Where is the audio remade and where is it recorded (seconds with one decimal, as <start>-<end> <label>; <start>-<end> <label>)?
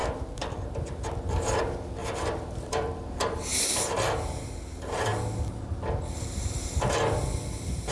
0.0-1.6 remade; 1.6-2.0 recorded; 2.0-2.9 remade; 2.9-7.9 recorded